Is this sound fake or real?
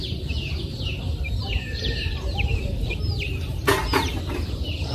fake